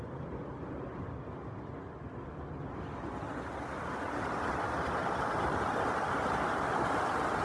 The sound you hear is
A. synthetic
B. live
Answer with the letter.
B